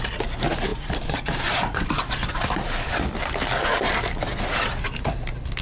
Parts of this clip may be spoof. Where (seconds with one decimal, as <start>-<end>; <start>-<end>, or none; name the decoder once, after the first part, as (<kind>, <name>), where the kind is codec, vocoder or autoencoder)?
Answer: 0.7-2.9 (vocoder, BigVGAN v2)